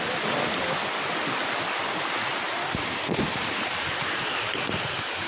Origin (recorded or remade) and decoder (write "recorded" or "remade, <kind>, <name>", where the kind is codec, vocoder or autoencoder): recorded